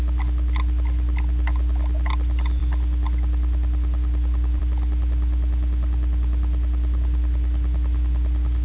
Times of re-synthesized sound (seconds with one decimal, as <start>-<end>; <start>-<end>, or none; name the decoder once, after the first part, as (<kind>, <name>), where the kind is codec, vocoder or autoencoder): none